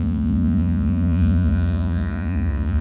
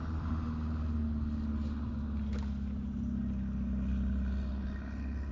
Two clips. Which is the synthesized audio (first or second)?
first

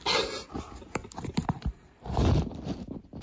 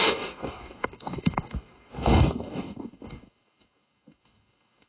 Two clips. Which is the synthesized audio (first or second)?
second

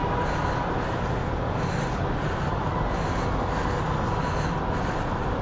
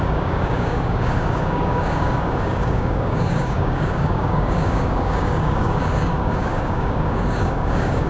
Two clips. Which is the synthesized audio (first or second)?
second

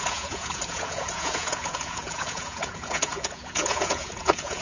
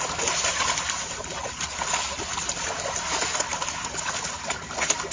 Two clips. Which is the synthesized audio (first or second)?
first